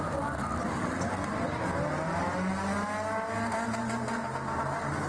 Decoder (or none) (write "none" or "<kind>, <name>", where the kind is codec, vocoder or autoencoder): none